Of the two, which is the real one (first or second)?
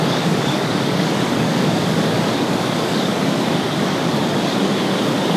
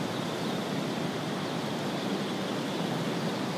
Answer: second